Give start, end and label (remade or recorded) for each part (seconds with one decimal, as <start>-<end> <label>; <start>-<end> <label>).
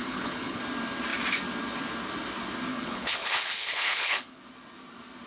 0.0-0.6 remade; 0.6-2.7 recorded; 2.7-4.4 remade; 4.4-5.3 recorded